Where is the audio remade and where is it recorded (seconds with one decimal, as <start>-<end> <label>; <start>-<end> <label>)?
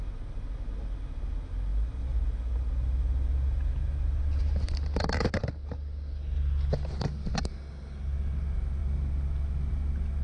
0.0-10.2 recorded